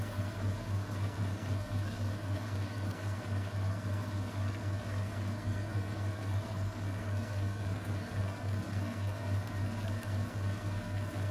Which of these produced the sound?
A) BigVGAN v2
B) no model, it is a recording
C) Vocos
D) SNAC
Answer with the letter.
D